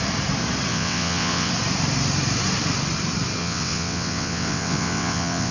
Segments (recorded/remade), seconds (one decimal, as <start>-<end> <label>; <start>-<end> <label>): 0.0-0.7 recorded; 0.7-1.5 remade; 1.5-3.4 recorded; 3.4-5.5 remade